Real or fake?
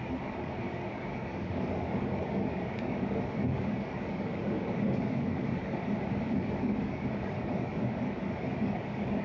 fake